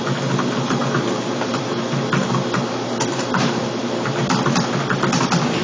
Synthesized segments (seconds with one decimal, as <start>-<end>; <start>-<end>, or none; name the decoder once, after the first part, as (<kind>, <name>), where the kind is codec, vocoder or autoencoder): none